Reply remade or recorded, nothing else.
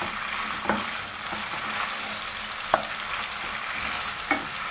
recorded